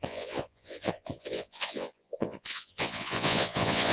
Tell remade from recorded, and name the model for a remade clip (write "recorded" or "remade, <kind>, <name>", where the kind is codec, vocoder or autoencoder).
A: remade, vocoder, Vocos